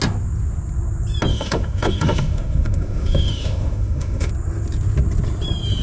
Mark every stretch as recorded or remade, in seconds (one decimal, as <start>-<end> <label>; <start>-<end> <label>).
0.0-1.3 recorded; 1.3-4.3 remade; 4.3-5.8 recorded